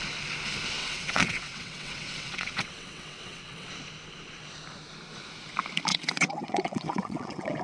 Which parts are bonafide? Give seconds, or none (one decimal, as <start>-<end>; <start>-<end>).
0.0-0.8; 3.7-5.9